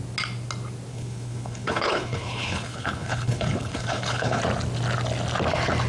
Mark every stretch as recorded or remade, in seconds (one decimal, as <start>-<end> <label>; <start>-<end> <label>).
0.0-0.9 recorded; 0.9-4.4 remade; 4.4-5.9 recorded